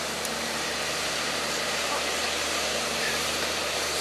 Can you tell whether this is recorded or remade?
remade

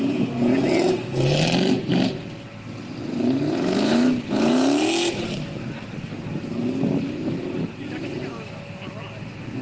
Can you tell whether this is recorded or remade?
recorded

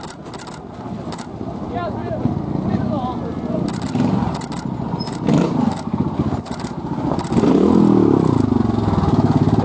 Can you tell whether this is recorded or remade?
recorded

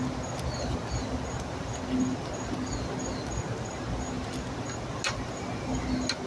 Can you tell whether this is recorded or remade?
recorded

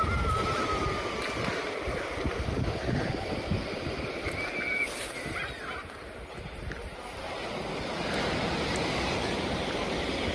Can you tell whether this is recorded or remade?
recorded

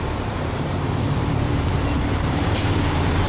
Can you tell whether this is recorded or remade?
remade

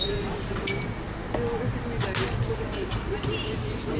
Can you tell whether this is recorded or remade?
recorded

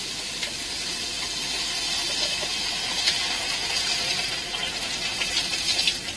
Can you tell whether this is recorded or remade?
remade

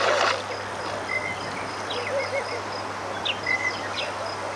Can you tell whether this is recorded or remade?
recorded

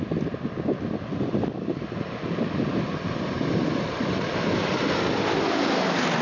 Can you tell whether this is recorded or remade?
remade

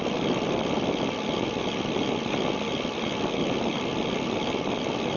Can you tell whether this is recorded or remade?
recorded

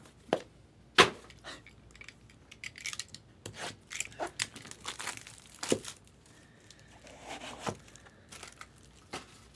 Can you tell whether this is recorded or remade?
recorded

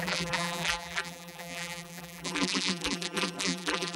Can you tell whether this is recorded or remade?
remade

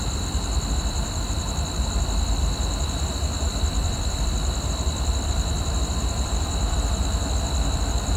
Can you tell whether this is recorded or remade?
remade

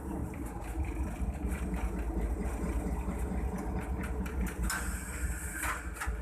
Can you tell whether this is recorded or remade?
recorded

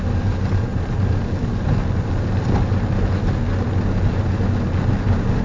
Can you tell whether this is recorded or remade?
recorded